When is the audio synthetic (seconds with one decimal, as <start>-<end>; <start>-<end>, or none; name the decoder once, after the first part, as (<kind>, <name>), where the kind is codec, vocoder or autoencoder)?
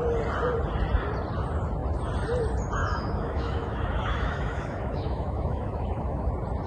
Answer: 2.8-6.3 (autoencoder, DAC-VAE)